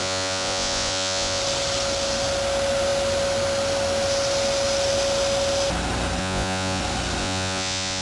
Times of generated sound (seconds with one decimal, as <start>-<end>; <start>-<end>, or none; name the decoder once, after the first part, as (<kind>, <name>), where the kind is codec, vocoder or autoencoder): 0.0-1.4 (vocoder, Vocos); 6.2-6.8; 7.2-8.0